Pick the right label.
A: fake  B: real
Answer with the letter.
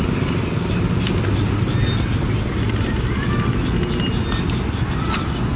B